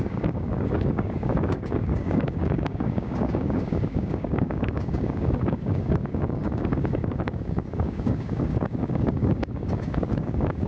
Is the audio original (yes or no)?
no